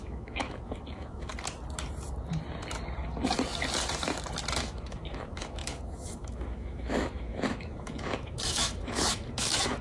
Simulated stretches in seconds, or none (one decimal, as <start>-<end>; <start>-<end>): 0.0-1.3; 4.6-9.8